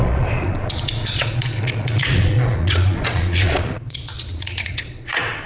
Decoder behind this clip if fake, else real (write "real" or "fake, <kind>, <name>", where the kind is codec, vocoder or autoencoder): fake, vocoder, Vocos